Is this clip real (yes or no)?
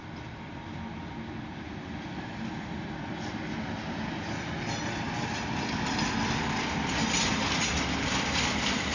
yes